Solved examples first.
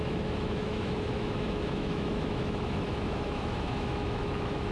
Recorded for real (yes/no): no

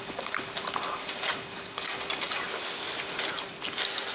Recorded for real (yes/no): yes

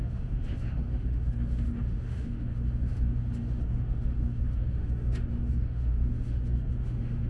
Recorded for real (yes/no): no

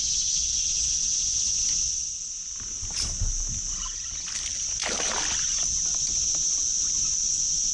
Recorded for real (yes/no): yes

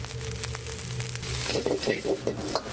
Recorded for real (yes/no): yes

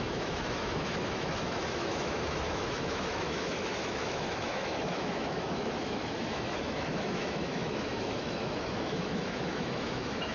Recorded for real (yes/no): no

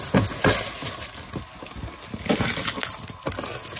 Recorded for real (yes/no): yes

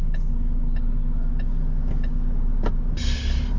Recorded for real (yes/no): yes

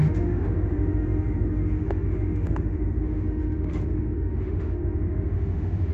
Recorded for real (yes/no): no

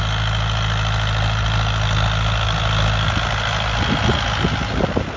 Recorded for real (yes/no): yes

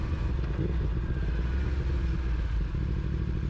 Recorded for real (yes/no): yes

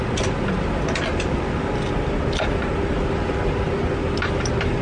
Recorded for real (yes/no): yes